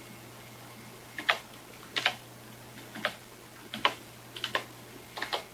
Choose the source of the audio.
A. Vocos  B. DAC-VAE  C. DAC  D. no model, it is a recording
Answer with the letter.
D